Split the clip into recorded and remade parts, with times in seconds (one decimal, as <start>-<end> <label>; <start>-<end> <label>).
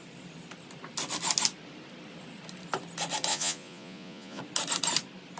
0.0-3.3 recorded; 3.3-4.4 remade; 4.4-5.4 recorded